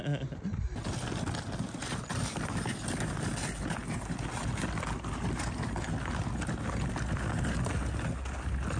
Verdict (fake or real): real